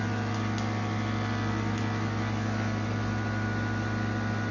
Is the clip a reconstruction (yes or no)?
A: no